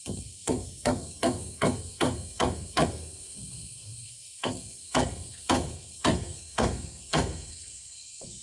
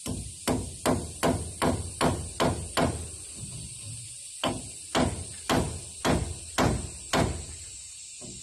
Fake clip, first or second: first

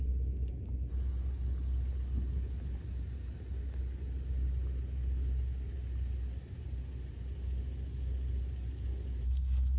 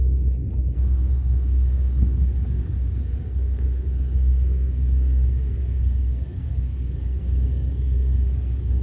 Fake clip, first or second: second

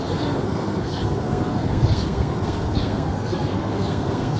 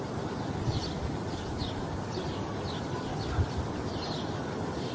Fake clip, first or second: first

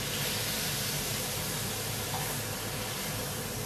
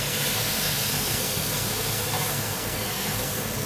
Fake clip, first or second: second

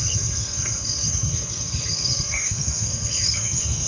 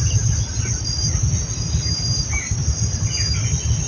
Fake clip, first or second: first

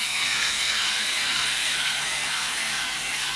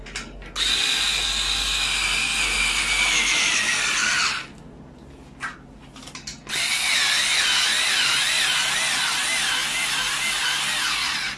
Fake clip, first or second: first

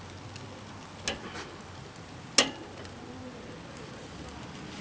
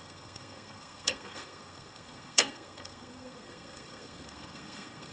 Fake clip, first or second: second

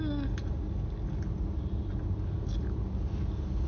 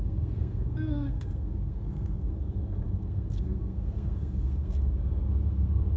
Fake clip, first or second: second